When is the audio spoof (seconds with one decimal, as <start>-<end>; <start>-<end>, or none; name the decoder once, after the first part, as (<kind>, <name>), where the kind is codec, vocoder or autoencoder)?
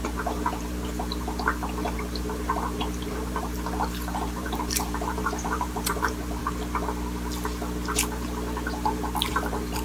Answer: 0.0-6.4 (vocoder, BigVGAN v2); 9.3-9.8